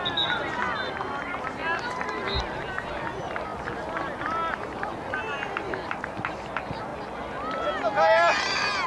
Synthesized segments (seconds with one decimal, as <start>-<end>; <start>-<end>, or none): none